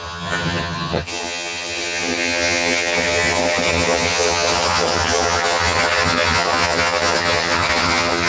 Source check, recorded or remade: remade